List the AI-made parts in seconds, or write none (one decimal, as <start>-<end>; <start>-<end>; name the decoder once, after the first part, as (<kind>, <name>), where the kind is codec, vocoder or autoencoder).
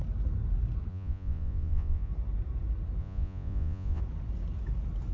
0.9-2.1 (vocoder, Vocos); 3.0-4.0